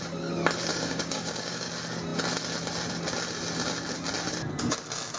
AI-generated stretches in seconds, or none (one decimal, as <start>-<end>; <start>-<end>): 0.7-1.7